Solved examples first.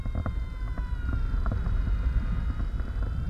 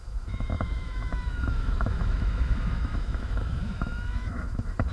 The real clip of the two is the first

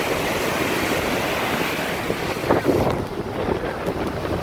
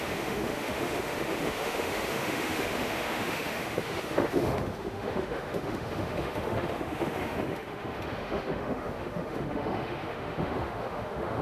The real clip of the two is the first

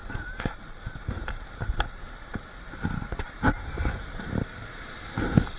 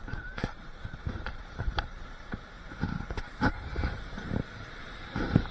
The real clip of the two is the first